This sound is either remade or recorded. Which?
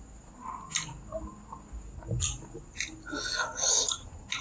recorded